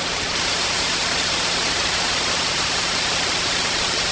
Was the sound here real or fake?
fake